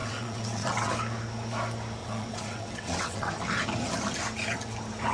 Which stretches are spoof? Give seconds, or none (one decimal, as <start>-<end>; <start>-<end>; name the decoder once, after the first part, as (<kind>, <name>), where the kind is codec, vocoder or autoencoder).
0.0-0.9 (vocoder, WaveNeXt); 2.0-3.3